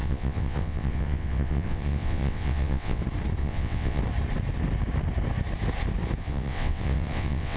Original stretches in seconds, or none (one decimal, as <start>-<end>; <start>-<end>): 3.0-3.4; 4.0-6.2